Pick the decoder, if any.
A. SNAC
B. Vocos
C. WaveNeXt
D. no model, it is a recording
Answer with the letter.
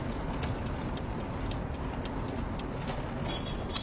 D